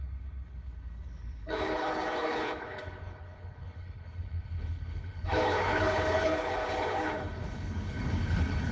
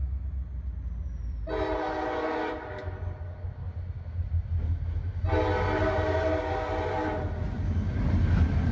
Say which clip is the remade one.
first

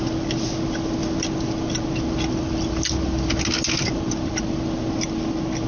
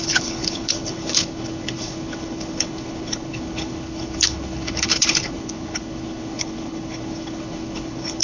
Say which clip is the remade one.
second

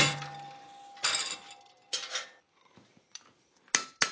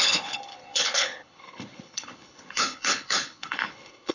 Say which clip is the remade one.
second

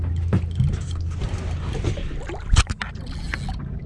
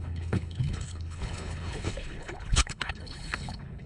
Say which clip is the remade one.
second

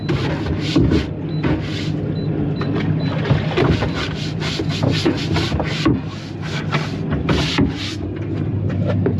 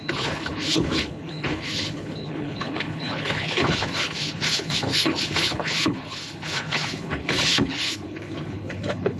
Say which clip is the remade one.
second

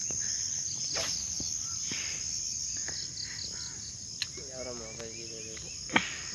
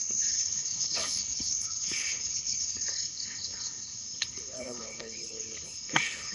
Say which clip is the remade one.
second